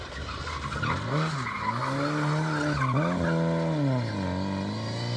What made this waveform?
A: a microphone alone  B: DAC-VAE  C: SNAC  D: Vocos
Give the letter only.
A